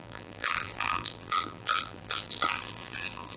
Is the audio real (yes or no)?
no